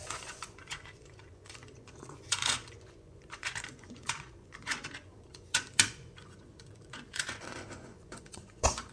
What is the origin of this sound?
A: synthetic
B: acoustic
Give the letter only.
A